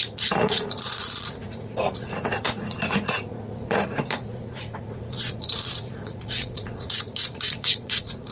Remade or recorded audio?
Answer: remade